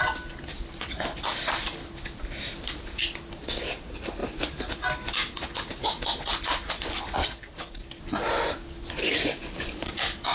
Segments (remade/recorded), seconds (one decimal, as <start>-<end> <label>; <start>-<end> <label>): 0.0-7.2 recorded; 7.2-8.0 remade; 8.0-9.0 recorded; 9.0-9.9 remade; 9.9-10.3 recorded